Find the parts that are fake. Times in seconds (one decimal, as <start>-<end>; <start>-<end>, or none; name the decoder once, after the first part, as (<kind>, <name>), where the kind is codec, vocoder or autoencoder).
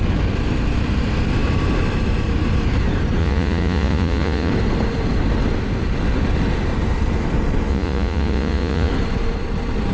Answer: 3.2-4.5 (vocoder, Vocos); 7.7-8.9